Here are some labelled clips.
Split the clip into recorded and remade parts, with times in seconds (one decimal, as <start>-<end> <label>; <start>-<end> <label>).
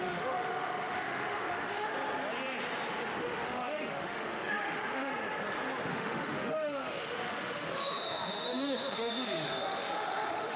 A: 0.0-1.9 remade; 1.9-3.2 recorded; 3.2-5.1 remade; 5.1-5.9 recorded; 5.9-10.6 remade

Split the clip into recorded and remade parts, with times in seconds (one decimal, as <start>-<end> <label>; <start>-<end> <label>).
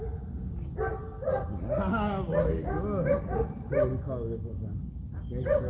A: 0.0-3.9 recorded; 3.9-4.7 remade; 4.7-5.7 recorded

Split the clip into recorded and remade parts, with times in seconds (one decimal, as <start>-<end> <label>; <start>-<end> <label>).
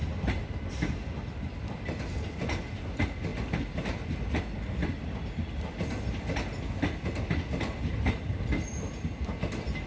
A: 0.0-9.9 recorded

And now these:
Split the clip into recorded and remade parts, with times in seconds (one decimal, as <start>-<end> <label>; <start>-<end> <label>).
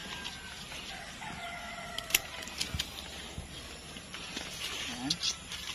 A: 0.0-5.7 recorded